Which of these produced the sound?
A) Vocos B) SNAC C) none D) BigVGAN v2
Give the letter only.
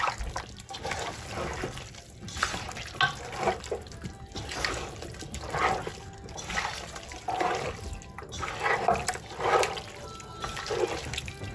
C